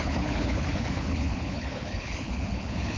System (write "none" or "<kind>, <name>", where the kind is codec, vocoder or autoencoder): codec, HILCodec